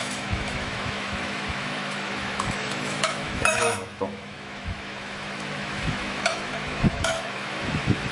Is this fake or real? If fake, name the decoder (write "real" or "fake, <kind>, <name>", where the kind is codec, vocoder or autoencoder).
fake, autoencoder, DAC-VAE